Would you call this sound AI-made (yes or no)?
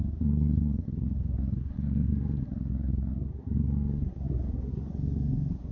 yes